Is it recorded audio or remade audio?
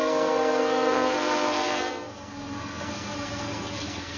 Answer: remade